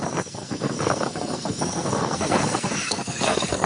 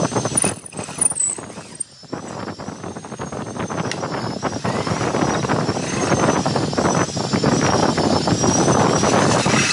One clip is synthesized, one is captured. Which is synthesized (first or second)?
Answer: first